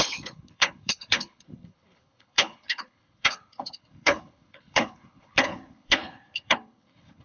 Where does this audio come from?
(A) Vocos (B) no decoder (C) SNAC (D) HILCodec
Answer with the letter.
D